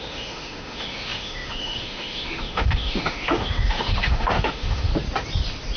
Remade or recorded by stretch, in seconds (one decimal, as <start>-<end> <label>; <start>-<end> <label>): 0.0-4.9 remade; 4.9-5.8 recorded